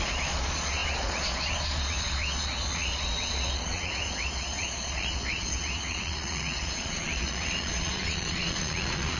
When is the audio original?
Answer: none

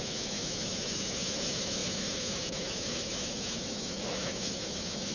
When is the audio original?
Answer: none

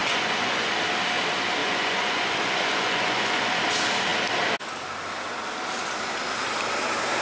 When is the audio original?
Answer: 0.7-1.6; 3.6-7.2

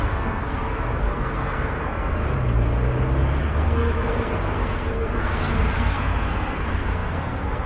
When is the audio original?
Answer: 2.2-3.4

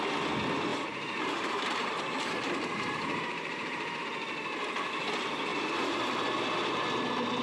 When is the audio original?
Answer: 0.0-0.7; 4.0-5.5; 6.0-7.4

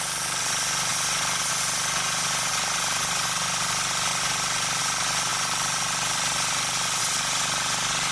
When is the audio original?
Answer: 0.0-8.1

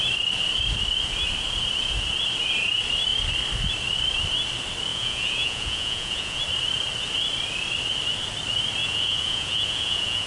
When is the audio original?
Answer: 0.0-4.9; 6.4-8.8

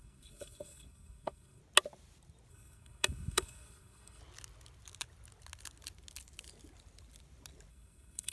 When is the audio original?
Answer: 1.6-2.5; 4.2-7.7